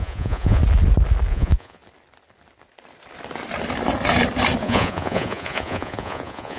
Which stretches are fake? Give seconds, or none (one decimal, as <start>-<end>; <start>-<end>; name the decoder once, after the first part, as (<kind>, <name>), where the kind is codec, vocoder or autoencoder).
0.0-0.6 (vocoder, Vocos); 1.3-1.8; 4.6-6.6